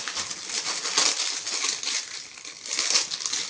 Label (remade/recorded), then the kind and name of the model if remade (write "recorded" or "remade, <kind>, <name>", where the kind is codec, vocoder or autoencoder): recorded